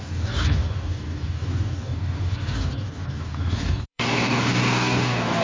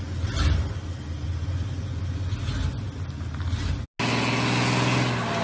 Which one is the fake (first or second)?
first